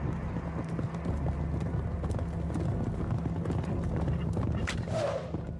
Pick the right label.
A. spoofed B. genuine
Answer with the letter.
B